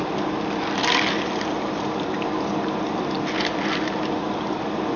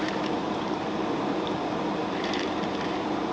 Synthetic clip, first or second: second